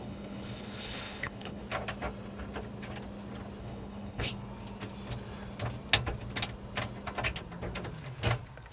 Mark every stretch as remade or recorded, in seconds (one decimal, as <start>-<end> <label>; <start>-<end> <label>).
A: 0.0-1.6 remade; 1.6-3.6 recorded; 3.6-4.3 remade; 4.3-8.7 recorded